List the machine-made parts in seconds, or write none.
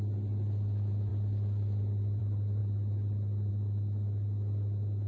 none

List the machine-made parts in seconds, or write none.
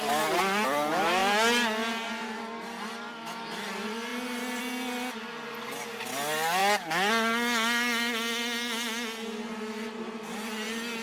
none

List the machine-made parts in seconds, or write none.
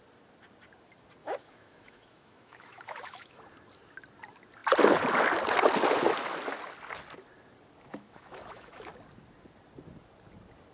1.2-3.4 (autoencoder, DAC-VAE); 7.9-8.9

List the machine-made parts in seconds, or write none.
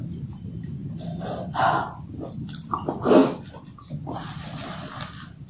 0.8-1.6 (vocoder, BigVGAN v2)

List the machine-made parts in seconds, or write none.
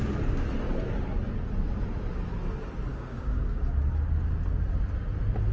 2.9-3.6 (codec, DAC)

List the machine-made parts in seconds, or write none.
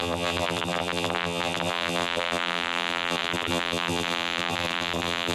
0.0-5.3 (vocoder, BigVGAN v2)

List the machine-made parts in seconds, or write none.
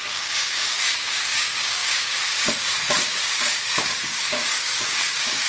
0.0-5.5 (codec, DAC)